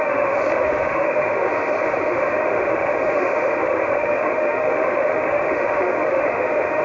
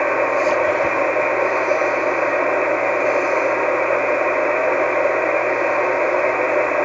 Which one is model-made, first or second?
first